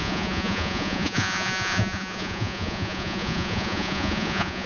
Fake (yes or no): yes